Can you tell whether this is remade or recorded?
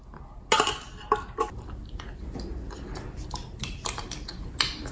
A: recorded